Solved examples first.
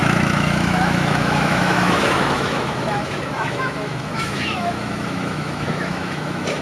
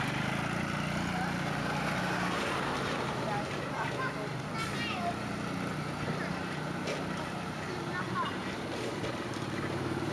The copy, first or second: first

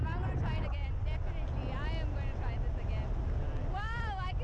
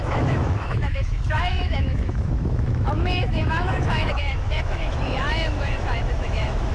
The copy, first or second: second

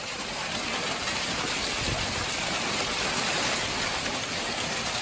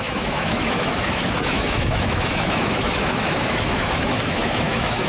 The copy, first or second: second